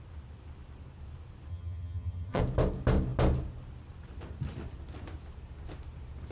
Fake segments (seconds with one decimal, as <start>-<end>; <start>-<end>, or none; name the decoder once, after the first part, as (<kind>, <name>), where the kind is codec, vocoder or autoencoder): 1.5-2.4 (vocoder, HiFi-GAN)